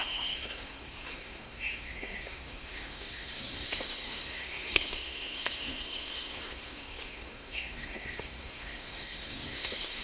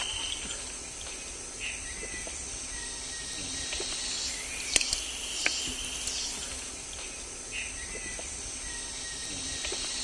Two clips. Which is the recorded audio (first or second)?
second